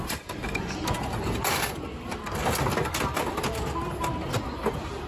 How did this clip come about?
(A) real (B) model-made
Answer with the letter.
A